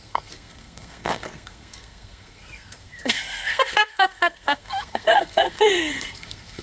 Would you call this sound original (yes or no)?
no